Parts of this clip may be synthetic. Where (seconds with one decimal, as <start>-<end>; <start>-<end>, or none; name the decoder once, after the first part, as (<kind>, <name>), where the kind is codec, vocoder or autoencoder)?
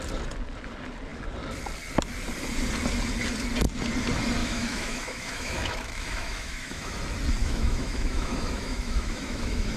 4.4-7.0 (autoencoder, DAC-VAE); 7.4-9.8